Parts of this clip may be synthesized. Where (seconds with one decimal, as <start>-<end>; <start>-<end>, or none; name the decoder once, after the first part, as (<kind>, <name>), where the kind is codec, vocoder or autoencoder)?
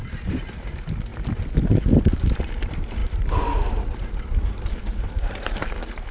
0.0-1.1 (vocoder, BigVGAN v2); 1.7-6.1